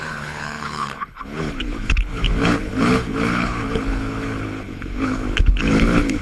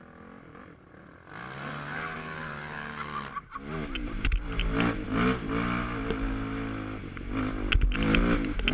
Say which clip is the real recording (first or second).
second